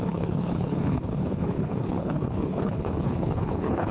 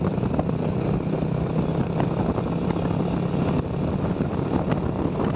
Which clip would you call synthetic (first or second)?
first